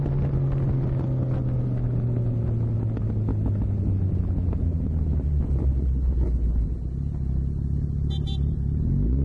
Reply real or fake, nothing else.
real